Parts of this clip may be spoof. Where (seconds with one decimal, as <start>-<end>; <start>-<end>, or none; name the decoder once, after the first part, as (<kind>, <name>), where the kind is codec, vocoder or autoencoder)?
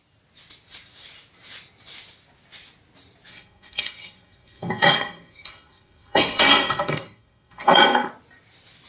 3.3-8.1 (codec, SNAC)